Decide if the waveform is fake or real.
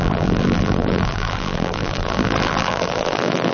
fake